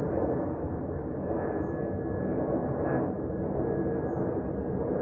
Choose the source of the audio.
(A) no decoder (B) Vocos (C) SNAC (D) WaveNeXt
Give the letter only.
A